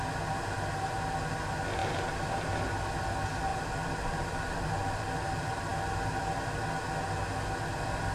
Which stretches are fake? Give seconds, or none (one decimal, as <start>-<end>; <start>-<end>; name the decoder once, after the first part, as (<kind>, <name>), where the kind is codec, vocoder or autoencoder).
1.8-2.3 (vocoder, BigVGAN v2); 3.5-5.1